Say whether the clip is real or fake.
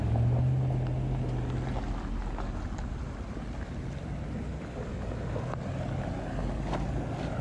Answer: real